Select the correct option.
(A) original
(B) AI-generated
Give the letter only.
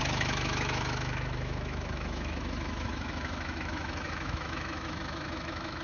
B